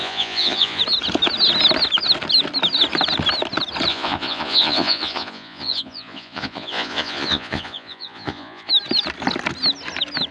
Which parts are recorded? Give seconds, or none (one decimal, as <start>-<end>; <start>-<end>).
0.8-3.9; 8.7-10.3